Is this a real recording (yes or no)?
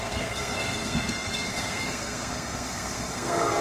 no